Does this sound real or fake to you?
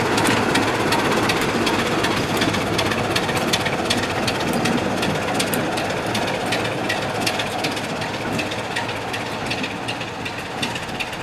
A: real